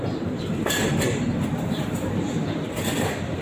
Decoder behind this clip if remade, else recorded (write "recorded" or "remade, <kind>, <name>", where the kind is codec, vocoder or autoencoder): remade, vocoder, BigVGAN v2